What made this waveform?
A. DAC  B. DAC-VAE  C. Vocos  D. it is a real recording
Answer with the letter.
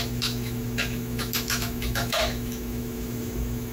B